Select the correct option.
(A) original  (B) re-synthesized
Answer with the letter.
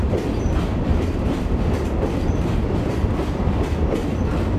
A